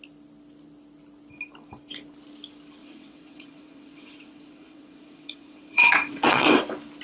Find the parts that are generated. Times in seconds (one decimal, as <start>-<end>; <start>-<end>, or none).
2.8-6.6